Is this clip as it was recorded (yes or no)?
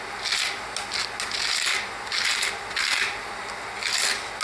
yes